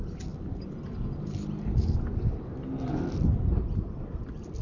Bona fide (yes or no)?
yes